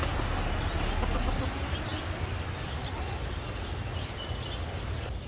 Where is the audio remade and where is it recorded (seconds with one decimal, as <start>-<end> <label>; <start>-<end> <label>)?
0.0-5.3 recorded